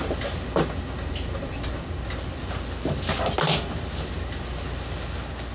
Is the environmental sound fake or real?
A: real